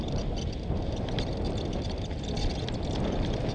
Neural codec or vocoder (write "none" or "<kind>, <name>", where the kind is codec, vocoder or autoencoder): none